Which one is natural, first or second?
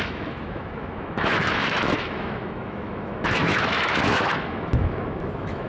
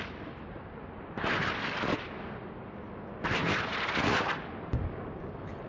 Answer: second